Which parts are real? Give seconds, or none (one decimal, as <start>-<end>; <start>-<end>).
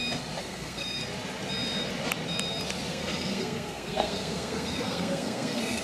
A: 0.0-0.4; 1.0-2.9